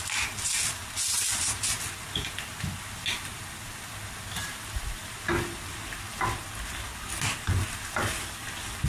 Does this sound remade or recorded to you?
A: recorded